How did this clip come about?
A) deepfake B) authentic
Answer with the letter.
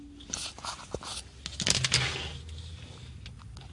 B